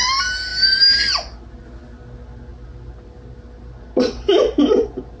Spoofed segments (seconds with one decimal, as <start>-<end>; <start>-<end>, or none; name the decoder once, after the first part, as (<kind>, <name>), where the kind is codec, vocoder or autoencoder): none